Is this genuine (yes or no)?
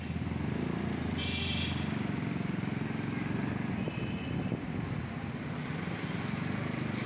yes